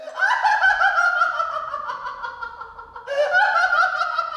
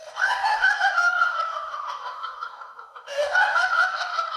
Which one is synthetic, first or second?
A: second